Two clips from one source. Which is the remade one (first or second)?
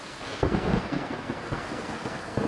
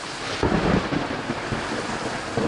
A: first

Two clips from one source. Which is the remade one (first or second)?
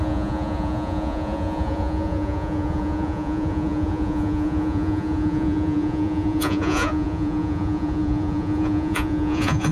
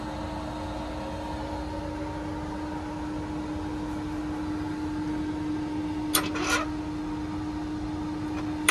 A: first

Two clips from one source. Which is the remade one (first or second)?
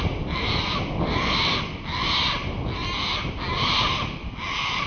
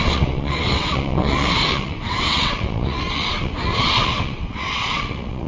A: second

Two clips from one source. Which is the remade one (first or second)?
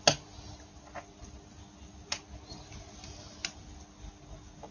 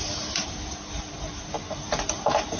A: second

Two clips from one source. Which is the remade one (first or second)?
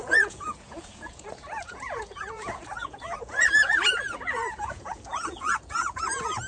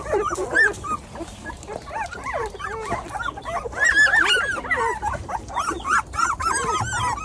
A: first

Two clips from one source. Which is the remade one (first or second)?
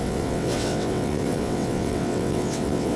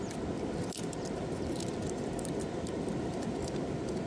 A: first